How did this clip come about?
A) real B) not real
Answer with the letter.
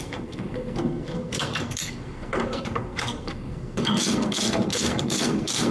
B